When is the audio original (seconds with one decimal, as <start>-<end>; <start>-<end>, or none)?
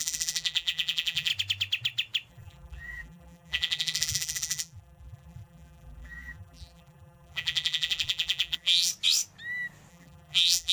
1.3-2.3; 8.9-9.9